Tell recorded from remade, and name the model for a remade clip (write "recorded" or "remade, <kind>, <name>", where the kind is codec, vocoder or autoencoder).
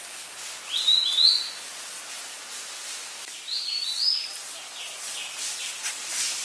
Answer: recorded